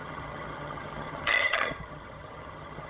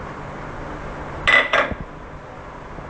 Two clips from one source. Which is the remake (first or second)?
first